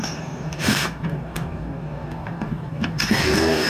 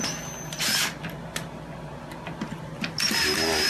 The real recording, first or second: second